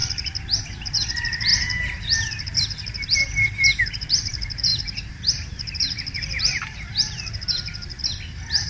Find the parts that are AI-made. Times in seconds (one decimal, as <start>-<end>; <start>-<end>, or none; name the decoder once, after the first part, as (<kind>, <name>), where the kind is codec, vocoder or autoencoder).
0.0-8.0 (vocoder, BigVGAN v2)